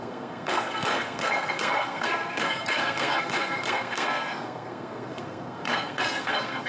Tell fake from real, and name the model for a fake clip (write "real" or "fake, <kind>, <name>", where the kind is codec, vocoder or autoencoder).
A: fake, codec, SNAC